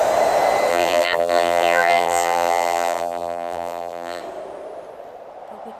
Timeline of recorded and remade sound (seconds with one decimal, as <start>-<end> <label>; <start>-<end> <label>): 0.0-0.7 recorded; 0.7-4.2 remade; 4.2-5.8 recorded